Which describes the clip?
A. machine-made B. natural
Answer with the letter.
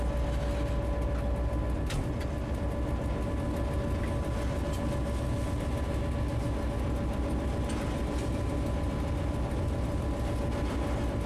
B